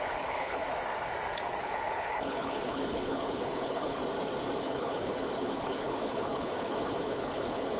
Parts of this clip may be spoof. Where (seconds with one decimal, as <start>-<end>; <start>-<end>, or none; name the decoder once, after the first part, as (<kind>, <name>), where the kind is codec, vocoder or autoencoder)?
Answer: 0.0-0.7 (codec, HILCodec); 1.6-4.0; 4.6-7.8